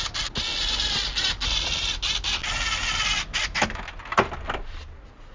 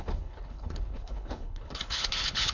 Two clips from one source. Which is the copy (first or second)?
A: second